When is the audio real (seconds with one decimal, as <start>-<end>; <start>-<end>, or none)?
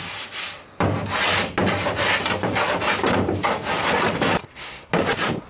0.0-4.4; 4.9-5.5